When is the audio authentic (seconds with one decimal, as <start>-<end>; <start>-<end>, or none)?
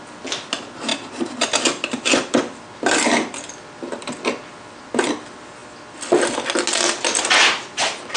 0.0-0.9; 3.8-5.6; 6.2-8.2